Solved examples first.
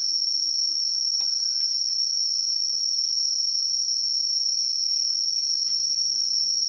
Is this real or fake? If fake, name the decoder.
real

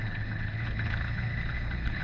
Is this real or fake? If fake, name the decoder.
fake, codec, HILCodec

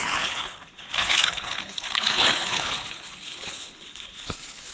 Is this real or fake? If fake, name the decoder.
fake, codec, HILCodec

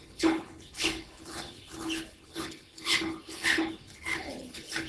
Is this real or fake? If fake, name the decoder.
fake, codec, HILCodec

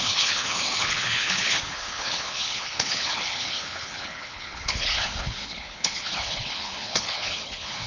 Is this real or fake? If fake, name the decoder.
fake, codec, HILCodec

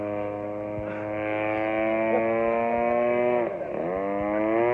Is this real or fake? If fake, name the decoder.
real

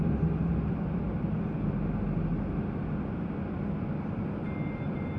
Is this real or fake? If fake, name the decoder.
real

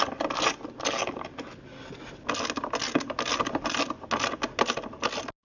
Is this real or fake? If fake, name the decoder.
real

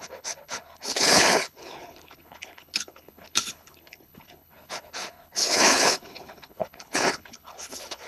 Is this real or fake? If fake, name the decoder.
fake, codec, HILCodec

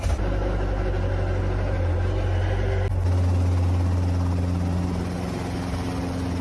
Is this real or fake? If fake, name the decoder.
real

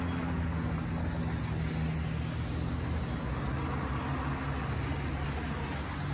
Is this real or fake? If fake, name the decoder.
real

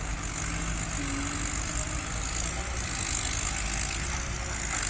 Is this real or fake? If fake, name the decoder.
real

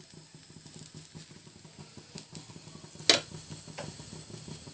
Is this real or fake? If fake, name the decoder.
real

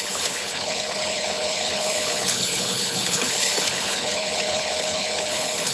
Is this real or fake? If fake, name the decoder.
fake, codec, HILCodec